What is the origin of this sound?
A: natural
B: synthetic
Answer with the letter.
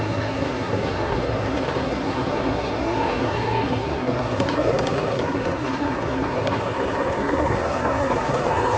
B